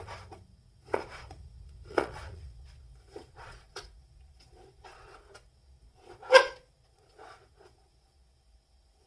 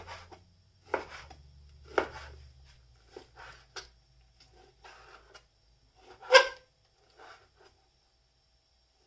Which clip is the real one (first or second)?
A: second